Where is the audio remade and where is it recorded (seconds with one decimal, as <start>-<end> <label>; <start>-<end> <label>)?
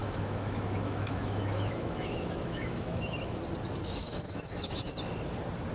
0.0-3.4 remade; 3.4-4.0 recorded; 4.0-4.9 remade; 4.9-5.7 recorded